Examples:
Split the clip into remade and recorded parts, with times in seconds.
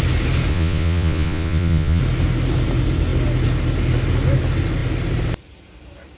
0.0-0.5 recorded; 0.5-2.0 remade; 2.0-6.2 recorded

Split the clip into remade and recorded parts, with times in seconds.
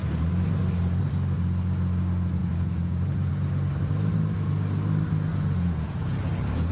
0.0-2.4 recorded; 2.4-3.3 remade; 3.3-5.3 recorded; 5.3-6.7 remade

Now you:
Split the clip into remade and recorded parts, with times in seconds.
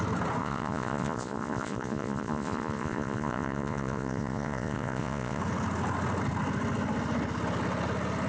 0.0-0.4 recorded; 0.4-5.4 remade; 5.4-8.3 recorded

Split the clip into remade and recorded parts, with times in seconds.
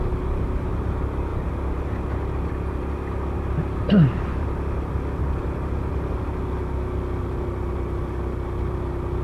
0.0-9.2 recorded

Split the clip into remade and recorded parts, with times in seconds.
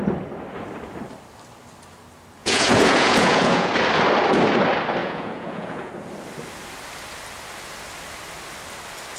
0.0-2.4 recorded; 2.4-3.7 remade; 3.7-5.0 recorded; 5.0-5.9 remade; 5.9-9.2 recorded